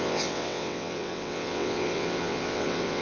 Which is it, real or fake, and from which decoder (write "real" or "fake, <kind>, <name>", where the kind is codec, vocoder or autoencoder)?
fake, vocoder, WaveNeXt